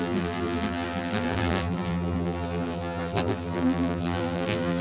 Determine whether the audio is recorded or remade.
remade